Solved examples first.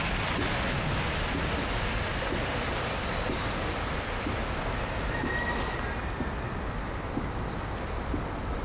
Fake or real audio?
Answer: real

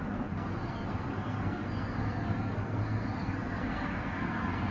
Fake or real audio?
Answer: fake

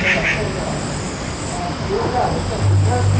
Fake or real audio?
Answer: real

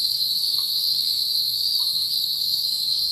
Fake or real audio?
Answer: fake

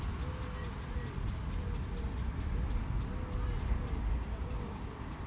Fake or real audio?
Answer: real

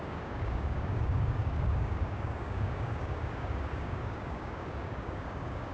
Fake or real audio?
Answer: fake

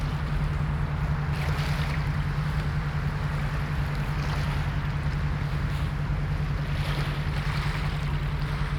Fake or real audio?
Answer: real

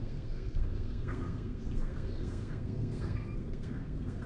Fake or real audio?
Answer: fake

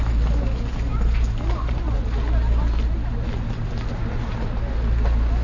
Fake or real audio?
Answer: real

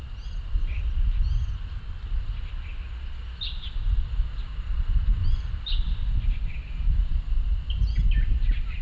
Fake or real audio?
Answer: real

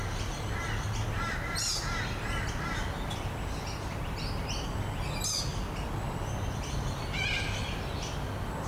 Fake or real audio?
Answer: real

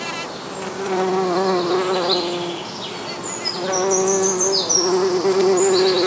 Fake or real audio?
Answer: real